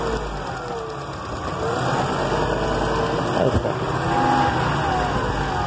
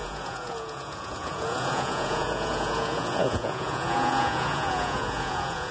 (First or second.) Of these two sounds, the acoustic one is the first